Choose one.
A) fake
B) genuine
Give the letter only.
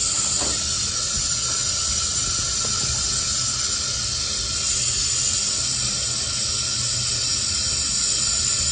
B